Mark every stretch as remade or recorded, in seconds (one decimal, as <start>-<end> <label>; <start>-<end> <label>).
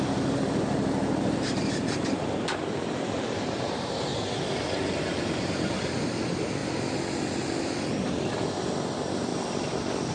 0.0-4.1 remade; 4.1-5.0 recorded; 5.0-6.6 remade; 6.6-8.9 recorded; 8.9-9.3 remade; 9.3-10.1 recorded